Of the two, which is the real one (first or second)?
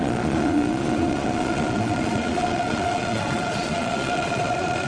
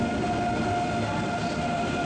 second